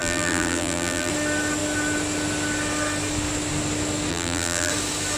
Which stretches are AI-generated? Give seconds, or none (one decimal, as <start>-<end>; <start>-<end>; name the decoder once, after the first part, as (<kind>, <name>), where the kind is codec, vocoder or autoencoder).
0.0-1.1 (vocoder, BigVGAN v2); 4.1-4.7